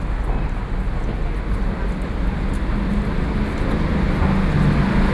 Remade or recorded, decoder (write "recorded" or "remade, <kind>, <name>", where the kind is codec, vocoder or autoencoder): recorded